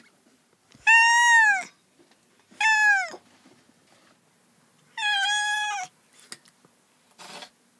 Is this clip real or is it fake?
real